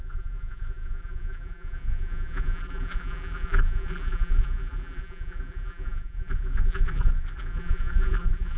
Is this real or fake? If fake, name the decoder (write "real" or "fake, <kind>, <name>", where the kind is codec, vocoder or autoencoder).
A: fake, vocoder, BigVGAN v2